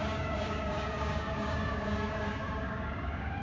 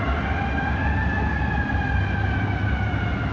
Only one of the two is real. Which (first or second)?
second